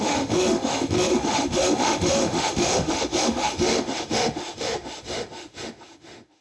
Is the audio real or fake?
fake